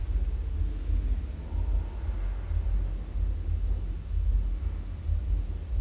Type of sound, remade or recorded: recorded